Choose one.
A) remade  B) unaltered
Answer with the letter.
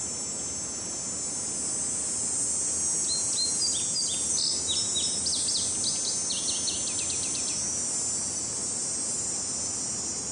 B